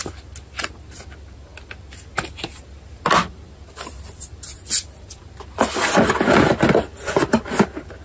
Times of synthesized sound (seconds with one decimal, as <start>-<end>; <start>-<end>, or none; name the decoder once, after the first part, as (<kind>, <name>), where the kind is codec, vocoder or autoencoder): none